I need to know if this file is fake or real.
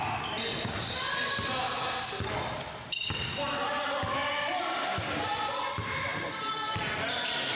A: real